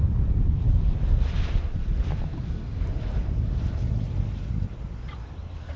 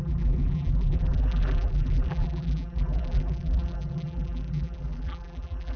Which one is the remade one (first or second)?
second